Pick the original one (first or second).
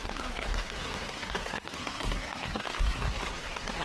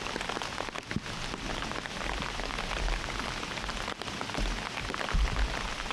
second